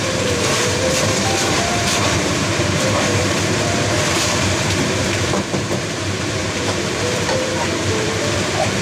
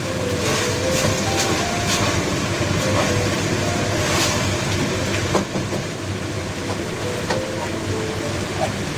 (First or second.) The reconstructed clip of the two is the first